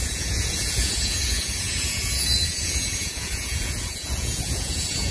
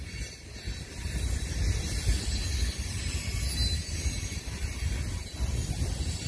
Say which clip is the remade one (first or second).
first